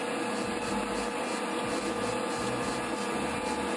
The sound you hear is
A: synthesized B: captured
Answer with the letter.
B